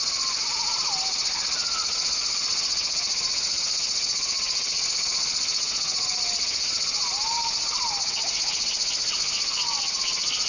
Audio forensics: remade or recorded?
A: recorded